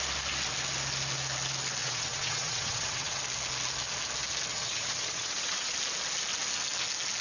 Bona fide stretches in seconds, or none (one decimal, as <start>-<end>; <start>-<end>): 0.0-1.8; 3.2-4.5; 5.7-7.2